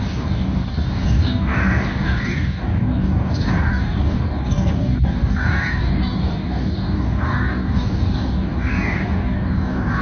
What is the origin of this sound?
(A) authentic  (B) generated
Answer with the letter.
B